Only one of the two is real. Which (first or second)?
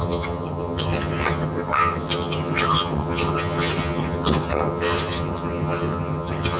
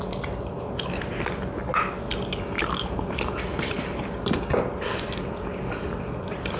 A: second